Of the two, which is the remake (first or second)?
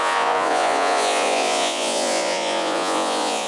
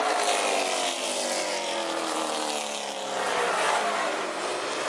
first